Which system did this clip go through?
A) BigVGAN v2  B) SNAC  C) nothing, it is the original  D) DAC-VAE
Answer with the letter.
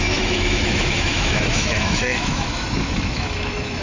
D